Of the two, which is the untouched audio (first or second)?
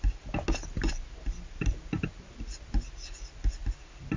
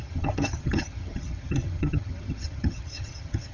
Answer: first